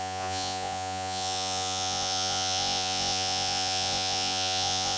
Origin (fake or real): fake